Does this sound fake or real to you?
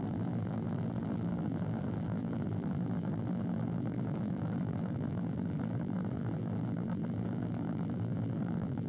fake